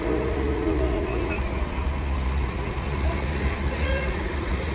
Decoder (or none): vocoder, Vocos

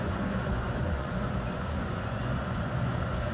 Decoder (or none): vocoder, Vocos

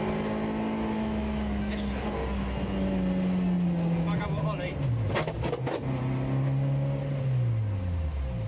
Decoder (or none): none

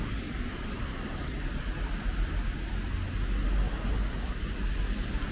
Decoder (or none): none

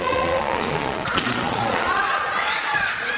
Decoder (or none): vocoder, Vocos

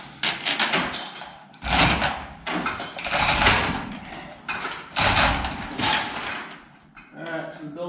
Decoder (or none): none